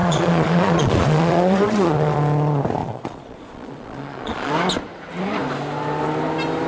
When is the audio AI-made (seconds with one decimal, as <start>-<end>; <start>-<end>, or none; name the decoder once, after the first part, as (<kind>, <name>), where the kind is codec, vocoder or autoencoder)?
0.0-2.2 (vocoder, Vocos); 2.8-4.5